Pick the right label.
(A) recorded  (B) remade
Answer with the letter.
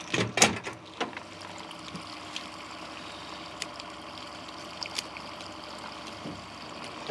A